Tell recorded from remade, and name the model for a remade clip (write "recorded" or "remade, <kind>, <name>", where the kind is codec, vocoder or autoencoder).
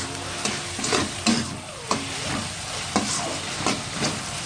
remade, vocoder, BigVGAN v2